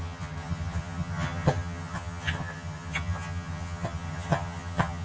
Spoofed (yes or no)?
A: yes